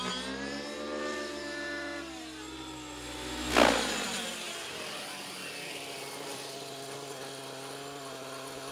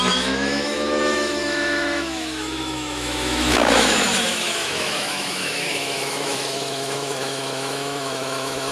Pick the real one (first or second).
first